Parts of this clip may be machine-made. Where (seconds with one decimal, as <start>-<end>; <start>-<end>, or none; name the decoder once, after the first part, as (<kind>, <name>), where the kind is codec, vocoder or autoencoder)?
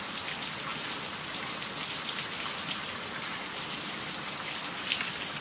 none